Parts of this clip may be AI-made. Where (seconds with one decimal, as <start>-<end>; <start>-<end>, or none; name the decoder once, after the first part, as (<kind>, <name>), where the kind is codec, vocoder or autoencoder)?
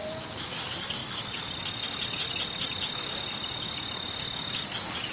none